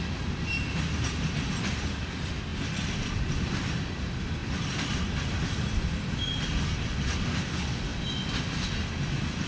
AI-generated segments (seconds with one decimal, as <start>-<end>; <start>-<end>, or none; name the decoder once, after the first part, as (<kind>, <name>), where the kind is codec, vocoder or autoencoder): none